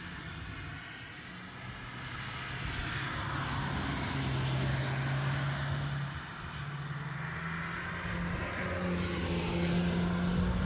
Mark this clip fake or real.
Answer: real